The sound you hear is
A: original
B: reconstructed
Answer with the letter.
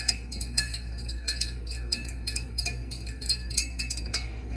B